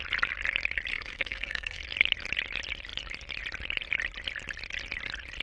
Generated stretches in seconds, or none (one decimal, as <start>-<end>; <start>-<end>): 0.9-1.8